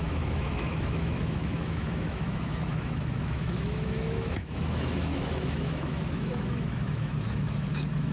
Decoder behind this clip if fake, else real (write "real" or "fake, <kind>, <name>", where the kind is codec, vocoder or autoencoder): fake, autoencoder, DAC-VAE